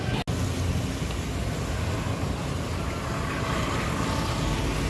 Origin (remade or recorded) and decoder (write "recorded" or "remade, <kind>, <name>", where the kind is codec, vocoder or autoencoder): recorded